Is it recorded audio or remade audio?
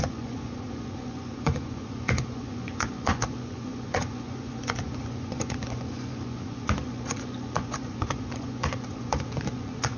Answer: remade